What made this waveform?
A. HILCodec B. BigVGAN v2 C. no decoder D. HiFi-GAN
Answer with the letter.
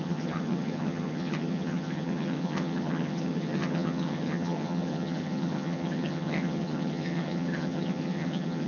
D